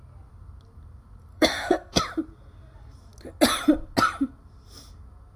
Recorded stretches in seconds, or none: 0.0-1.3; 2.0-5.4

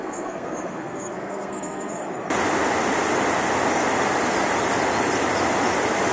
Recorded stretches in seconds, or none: 2.0-6.1

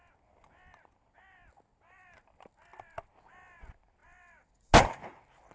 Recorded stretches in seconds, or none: 0.0-5.5

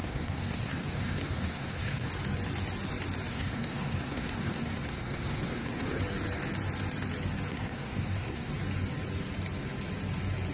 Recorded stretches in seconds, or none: 2.1-3.3; 6.0-7.5; 8.5-10.5

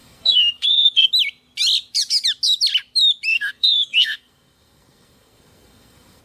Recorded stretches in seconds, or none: 1.1-3.3

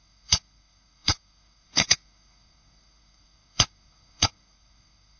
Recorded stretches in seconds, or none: none

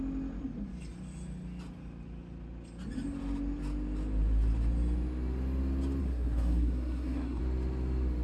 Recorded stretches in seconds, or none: 0.0-6.0; 7.4-8.2